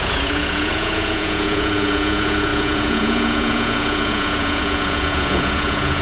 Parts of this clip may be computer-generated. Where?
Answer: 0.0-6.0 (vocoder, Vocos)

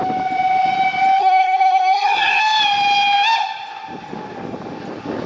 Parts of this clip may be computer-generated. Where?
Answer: 1.2-2.4 (codec, SNAC)

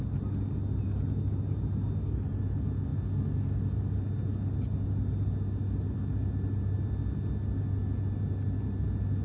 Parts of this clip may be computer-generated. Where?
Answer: none

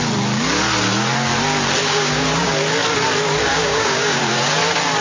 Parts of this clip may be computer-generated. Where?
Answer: 1.8-2.5 (codec, DAC); 3.5-4.2